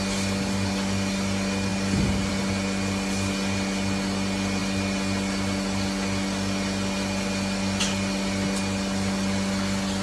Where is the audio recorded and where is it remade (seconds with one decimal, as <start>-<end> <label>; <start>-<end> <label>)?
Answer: 0.0-10.0 recorded